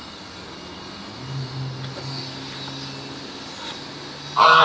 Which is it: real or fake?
real